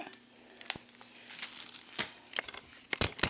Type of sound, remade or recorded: recorded